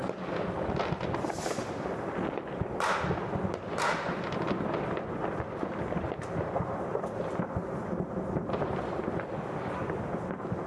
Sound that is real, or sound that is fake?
real